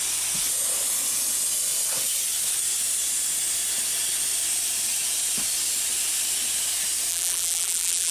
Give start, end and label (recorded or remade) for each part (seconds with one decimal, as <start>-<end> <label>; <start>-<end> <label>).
0.0-7.1 recorded; 7.1-8.1 remade